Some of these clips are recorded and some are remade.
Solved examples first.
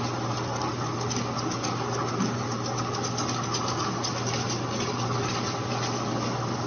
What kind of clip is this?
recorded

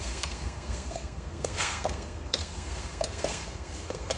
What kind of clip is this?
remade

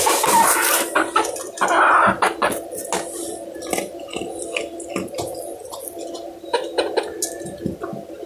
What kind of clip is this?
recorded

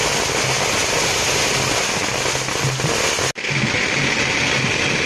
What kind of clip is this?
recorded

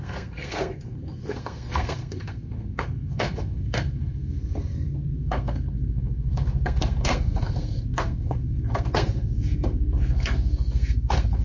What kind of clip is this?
remade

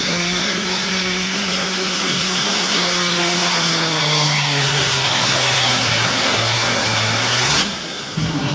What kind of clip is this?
remade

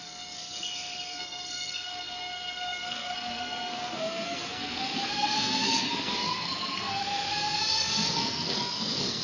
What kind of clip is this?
remade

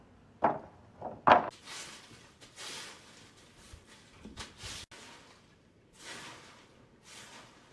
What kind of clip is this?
recorded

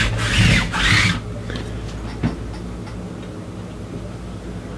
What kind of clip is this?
recorded